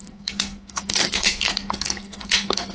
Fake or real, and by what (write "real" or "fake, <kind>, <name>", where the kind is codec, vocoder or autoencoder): fake, codec, SNAC